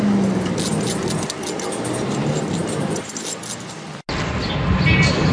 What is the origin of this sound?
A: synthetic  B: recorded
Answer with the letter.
B